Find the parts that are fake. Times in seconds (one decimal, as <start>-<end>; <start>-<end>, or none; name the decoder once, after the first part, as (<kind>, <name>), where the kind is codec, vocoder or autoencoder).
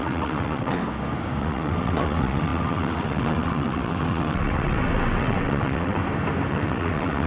0.0-0.8 (vocoder, WaveNeXt); 1.4-6.0; 6.5-7.3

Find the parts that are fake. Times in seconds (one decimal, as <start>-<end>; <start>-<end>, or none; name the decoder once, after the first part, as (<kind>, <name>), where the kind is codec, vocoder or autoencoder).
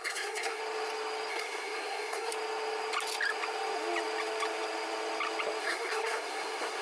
0.0-0.6 (codec, SNAC); 1.3-2.3; 5.6-6.8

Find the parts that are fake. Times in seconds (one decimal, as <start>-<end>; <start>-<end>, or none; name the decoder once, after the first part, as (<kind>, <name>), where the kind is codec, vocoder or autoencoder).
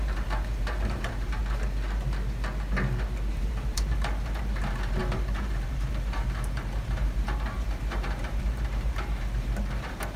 0.0-1.4 (vocoder, BigVGAN v2); 3.3-10.2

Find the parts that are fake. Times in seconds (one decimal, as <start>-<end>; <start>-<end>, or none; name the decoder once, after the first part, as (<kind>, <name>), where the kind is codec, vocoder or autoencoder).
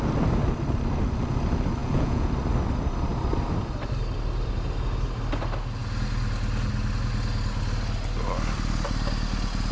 1.8-2.3 (vocoder, Vocos)